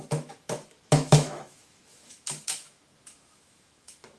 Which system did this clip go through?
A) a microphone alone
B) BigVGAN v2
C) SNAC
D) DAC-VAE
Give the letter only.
D